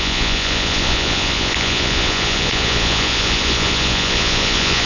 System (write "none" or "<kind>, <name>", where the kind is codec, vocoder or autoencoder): vocoder, Vocos